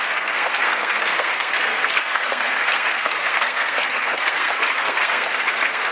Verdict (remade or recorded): remade